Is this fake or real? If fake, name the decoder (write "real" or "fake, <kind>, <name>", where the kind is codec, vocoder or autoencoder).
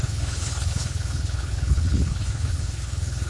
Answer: fake, codec, HILCodec